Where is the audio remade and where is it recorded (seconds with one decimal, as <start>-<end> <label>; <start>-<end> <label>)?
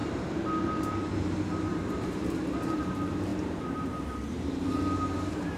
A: 0.0-5.6 remade